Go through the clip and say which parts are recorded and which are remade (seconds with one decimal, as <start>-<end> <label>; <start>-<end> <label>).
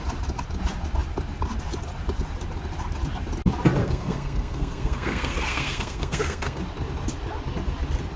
0.0-3.8 recorded; 3.8-6.6 remade; 6.6-8.2 recorded